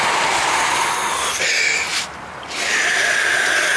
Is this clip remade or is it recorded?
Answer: remade